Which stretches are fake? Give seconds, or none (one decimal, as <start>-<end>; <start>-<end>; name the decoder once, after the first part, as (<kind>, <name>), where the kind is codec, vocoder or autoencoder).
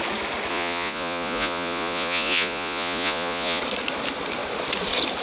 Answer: 0.5-3.6 (vocoder, Vocos)